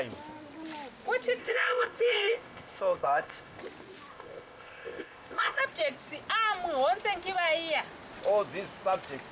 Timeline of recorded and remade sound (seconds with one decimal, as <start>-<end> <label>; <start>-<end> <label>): 0.0-1.4 recorded; 1.4-3.6 remade; 3.6-4.1 recorded; 4.1-5.6 remade; 5.6-9.3 recorded